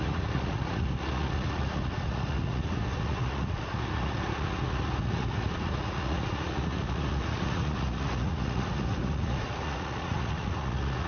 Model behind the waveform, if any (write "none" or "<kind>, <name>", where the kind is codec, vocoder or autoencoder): vocoder, Vocos